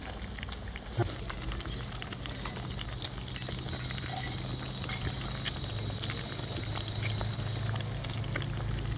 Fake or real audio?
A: real